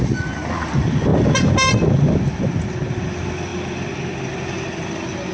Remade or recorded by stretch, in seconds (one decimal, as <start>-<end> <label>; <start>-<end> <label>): 0.0-5.3 recorded